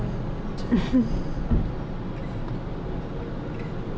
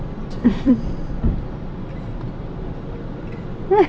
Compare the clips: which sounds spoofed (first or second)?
second